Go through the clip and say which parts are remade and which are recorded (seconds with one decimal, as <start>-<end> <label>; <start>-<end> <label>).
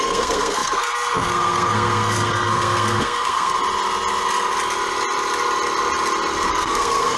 0.0-3.6 remade; 3.6-6.5 recorded; 6.5-7.2 remade